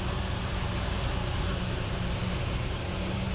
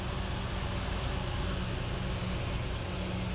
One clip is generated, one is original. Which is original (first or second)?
second